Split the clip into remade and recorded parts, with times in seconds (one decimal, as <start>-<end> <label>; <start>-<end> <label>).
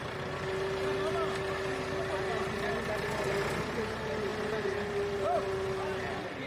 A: 0.0-6.5 recorded